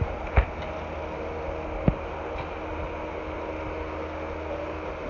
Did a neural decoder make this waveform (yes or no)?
no